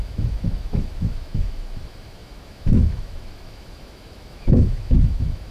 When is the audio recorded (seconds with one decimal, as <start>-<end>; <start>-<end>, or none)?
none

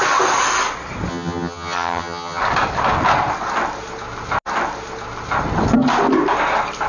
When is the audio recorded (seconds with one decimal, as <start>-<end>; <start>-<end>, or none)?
0.0-1.1; 2.4-6.9

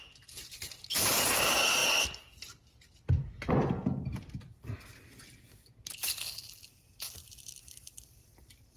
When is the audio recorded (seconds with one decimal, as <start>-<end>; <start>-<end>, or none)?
0.0-8.8

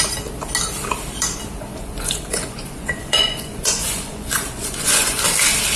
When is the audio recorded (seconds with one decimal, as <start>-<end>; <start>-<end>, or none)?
0.0-1.7; 5.2-5.8

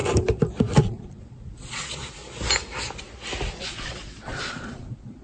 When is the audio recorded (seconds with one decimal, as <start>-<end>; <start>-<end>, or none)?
0.0-0.8; 2.2-3.6